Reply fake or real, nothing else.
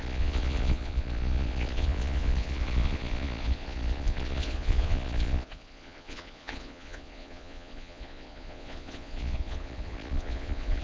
fake